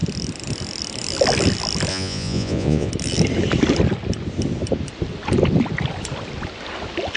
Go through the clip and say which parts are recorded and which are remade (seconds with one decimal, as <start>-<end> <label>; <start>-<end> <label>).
0.0-1.9 recorded; 1.9-2.9 remade; 2.9-7.2 recorded